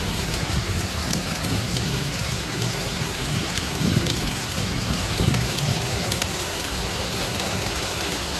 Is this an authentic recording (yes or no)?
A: no